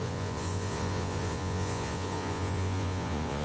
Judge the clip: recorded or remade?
remade